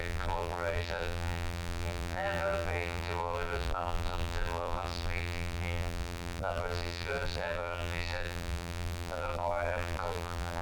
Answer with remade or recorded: remade